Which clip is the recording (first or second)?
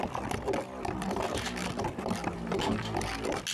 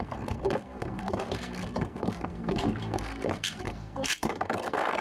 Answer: first